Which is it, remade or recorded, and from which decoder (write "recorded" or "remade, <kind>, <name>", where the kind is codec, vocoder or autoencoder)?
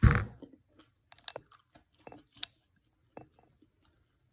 recorded